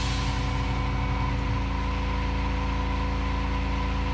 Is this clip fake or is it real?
real